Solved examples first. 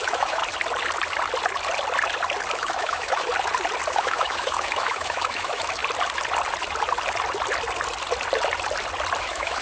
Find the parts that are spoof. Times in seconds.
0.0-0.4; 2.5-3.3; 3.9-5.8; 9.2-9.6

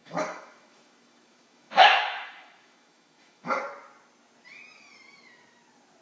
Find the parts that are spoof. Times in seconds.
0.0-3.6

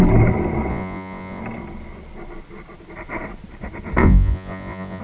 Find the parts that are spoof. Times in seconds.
0.7-1.4; 4.0-5.0